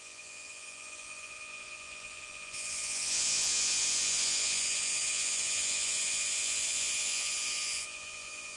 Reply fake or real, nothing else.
fake